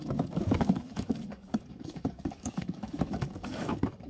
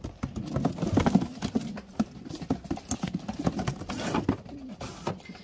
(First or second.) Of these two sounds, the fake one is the first